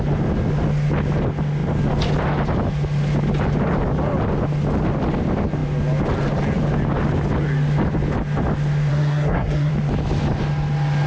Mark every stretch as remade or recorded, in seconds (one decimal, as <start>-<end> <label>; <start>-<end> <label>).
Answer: 0.0-8.9 recorded; 8.9-9.7 remade; 9.7-11.1 recorded